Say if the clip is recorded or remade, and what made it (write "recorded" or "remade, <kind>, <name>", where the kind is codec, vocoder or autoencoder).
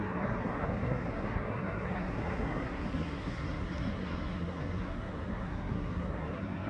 remade, codec, SNAC